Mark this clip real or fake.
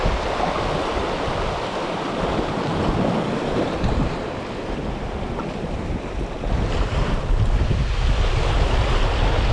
real